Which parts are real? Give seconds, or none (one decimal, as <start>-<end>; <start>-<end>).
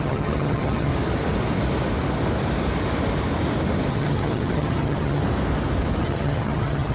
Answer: 0.9-3.9; 5.2-6.0